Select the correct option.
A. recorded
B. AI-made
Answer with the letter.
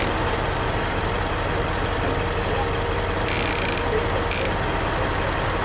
A